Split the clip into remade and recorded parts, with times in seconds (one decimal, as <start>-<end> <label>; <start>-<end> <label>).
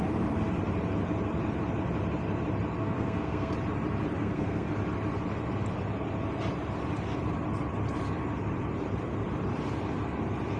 0.0-2.8 recorded; 2.8-3.5 remade; 3.5-4.2 recorded; 4.2-4.7 remade; 4.7-10.6 recorded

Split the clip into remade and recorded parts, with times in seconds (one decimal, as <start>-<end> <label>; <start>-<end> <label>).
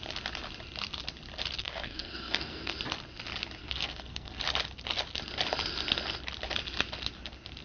0.0-1.6 recorded; 1.6-2.7 remade; 2.7-3.6 recorded; 3.6-4.4 remade; 4.4-7.6 recorded